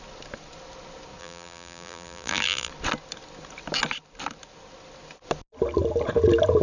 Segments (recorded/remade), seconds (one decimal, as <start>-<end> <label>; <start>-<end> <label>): 0.0-1.2 recorded; 1.2-2.7 remade; 2.7-6.6 recorded